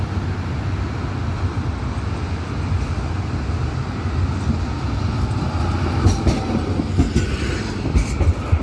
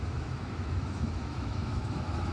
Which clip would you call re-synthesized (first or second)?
second